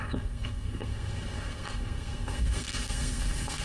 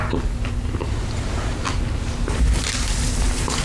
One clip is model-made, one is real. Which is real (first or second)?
second